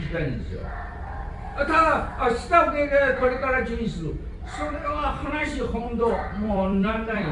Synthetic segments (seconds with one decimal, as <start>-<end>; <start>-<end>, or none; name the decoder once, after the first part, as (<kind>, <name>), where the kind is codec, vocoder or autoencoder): 0.0-0.6 (vocoder, BigVGAN v2); 4.7-7.3